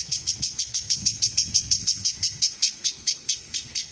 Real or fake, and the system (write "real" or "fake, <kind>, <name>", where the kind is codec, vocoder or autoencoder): fake, codec, SNAC